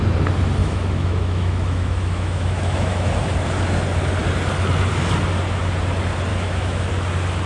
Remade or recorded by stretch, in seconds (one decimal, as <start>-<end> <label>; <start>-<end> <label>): 0.0-0.6 recorded; 0.6-3.1 remade; 3.1-6.3 recorded; 6.3-6.9 remade; 6.9-7.5 recorded